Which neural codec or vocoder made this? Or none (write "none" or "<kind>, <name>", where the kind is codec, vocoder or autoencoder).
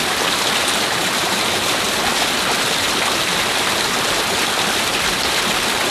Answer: none